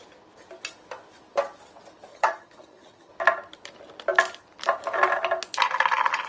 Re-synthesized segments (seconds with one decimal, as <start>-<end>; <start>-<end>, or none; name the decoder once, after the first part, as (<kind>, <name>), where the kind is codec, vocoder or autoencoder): 2.1-3.1 (vocoder, HiFi-GAN)